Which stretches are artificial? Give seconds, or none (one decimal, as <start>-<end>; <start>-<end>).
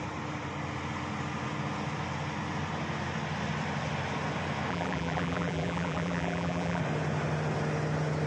4.7-6.8